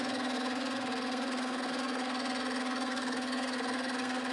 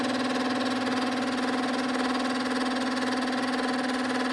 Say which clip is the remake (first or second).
first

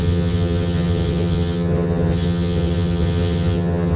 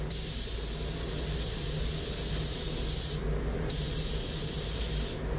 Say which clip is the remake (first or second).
first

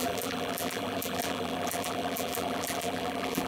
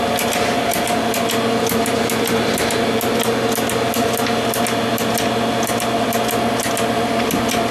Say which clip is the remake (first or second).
first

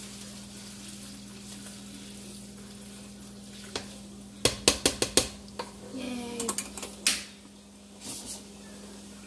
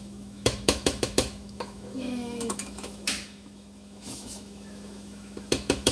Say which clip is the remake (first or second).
second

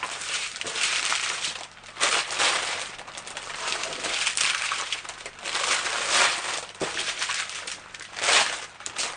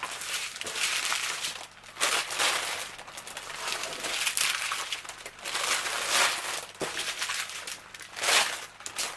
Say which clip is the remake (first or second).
first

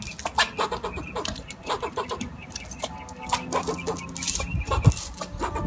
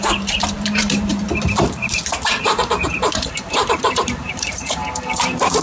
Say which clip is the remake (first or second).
second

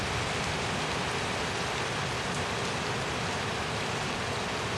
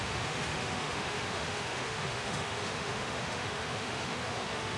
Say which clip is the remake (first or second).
second